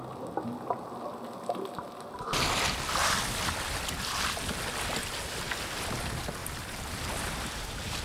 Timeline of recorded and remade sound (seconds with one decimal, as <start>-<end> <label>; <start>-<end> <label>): 0.0-8.0 recorded